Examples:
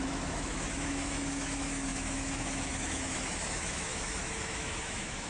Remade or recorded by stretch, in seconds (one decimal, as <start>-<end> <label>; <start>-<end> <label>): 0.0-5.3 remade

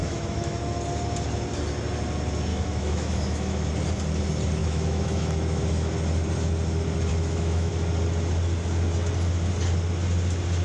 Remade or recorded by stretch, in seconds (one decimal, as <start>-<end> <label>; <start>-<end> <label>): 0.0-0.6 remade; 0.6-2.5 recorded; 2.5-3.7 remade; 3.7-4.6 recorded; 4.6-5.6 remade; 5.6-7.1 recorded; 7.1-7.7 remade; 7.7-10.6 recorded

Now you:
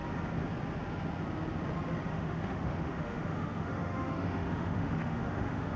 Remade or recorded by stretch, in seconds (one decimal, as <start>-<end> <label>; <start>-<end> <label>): 0.0-2.1 recorded; 2.1-5.8 remade